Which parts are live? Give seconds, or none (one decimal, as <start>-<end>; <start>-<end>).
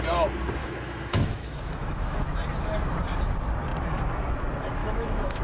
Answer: 0.0-0.6; 2.3-4.8